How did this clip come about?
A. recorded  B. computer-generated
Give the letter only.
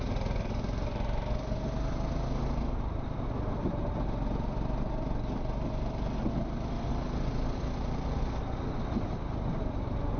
A